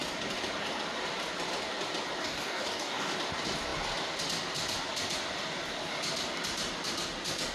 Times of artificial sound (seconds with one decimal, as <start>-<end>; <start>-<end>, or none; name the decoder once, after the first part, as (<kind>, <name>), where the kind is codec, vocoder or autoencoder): 2.2-3.1 (codec, DAC)